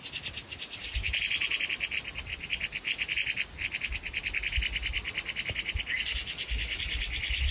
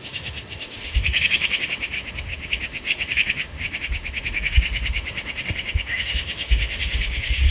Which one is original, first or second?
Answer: first